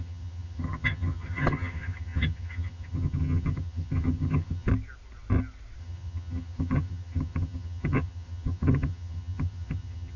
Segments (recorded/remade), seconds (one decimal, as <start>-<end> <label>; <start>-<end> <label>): 0.0-4.7 remade; 4.7-5.8 recorded; 5.8-10.2 remade